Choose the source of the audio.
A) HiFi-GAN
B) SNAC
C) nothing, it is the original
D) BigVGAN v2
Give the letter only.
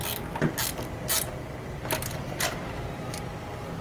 C